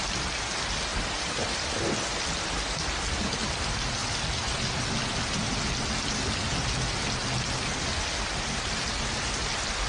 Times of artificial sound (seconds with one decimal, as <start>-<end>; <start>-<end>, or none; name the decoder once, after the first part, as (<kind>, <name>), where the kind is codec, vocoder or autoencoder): none